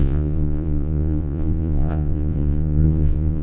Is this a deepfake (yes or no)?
yes